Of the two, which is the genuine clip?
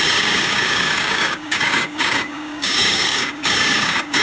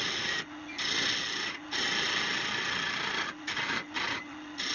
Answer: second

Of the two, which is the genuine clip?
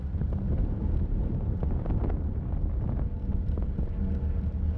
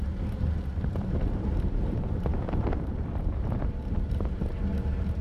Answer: first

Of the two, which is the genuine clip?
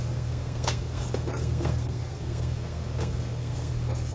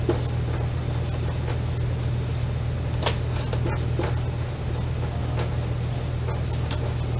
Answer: second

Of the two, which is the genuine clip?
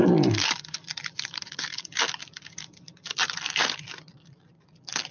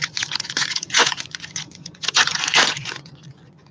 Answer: first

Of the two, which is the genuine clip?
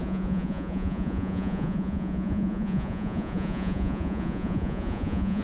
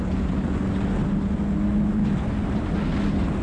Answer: second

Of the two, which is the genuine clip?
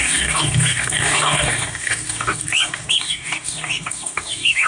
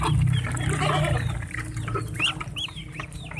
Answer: second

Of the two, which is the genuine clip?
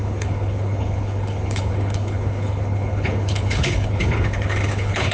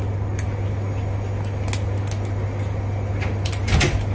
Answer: second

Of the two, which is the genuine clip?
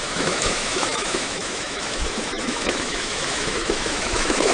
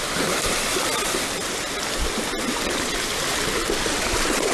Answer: second